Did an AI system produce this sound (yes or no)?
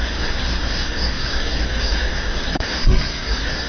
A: yes